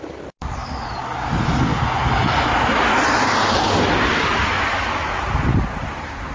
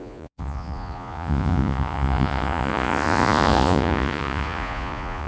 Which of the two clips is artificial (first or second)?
second